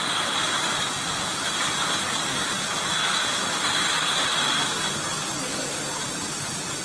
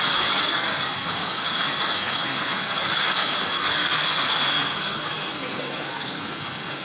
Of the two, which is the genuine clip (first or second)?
first